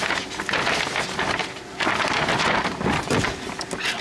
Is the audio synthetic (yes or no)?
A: no